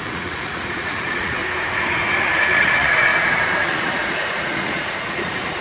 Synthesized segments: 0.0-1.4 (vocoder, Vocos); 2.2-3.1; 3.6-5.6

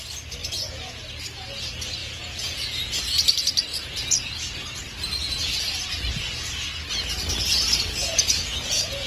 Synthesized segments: 0.4-1.0 (vocoder, Vocos); 2.0-3.0; 3.7-4.3; 8.0-9.1